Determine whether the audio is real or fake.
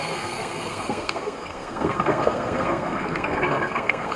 fake